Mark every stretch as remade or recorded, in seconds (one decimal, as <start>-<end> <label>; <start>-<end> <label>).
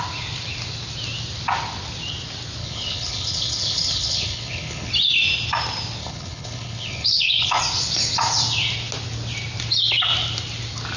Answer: 0.0-2.6 recorded; 2.6-4.9 remade; 4.9-6.0 recorded; 6.0-7.6 remade; 7.6-11.0 recorded